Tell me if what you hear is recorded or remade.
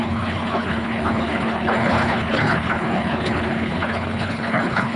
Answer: remade